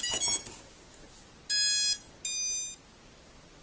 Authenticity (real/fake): real